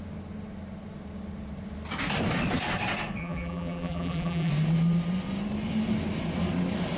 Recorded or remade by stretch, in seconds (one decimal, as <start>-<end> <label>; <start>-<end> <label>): 0.0-3.2 recorded; 3.2-4.5 remade; 4.5-7.0 recorded